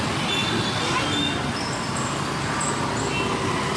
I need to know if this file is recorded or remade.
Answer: recorded